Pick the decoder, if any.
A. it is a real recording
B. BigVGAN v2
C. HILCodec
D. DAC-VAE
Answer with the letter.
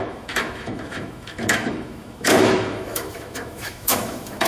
D